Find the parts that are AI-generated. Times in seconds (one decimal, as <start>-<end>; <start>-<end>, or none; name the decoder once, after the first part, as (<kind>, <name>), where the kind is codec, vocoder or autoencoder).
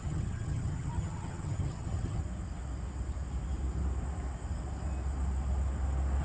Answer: 0.0-2.2 (vocoder, HiFi-GAN)